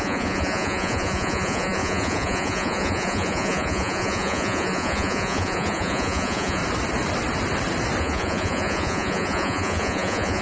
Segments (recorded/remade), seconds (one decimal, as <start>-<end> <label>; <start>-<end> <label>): 0.0-6.6 remade; 6.6-8.0 recorded; 8.0-10.4 remade